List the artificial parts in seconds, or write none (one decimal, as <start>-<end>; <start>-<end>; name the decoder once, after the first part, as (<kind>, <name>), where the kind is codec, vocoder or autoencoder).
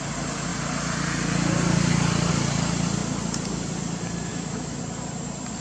4.3-4.8 (autoencoder, DAC-VAE)